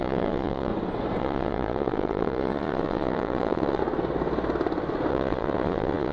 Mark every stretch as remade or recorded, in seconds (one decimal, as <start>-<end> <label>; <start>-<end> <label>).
0.0-0.7 remade; 0.7-1.2 recorded; 1.2-3.8 remade; 3.8-5.1 recorded; 5.1-6.1 remade